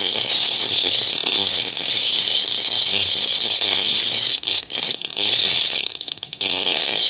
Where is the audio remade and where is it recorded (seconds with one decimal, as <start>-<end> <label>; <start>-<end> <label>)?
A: 0.0-7.1 remade